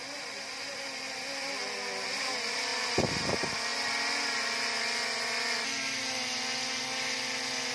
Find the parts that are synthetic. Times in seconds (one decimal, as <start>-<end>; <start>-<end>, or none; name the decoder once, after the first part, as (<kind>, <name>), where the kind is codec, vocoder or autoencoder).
none